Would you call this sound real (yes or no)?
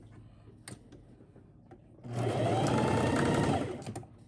yes